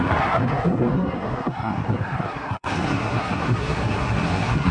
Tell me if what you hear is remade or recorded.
remade